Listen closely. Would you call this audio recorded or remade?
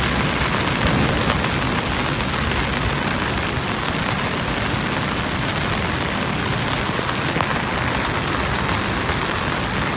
recorded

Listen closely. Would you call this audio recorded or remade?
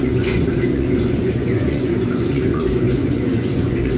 remade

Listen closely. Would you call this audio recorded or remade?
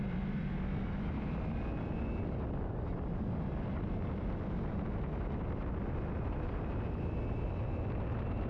recorded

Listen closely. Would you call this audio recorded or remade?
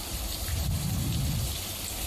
remade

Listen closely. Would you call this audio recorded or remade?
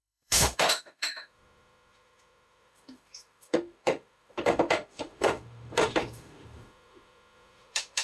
remade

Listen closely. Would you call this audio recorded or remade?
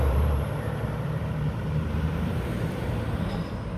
remade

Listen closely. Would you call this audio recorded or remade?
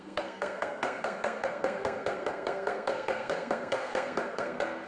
remade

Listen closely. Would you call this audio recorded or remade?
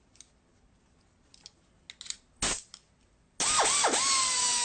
recorded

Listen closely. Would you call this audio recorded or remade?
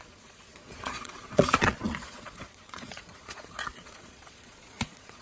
remade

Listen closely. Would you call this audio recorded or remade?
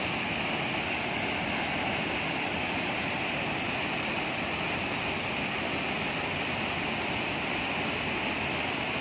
recorded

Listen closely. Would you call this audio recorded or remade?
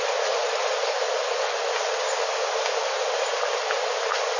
recorded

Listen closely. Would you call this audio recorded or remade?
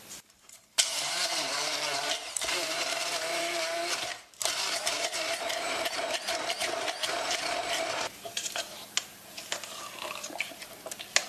remade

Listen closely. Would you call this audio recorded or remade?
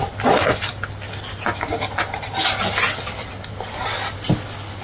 recorded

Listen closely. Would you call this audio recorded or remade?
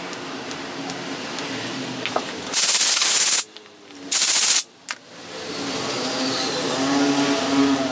recorded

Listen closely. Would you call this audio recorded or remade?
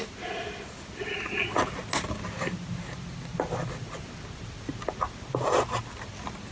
recorded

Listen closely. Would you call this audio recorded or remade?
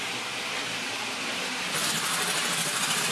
recorded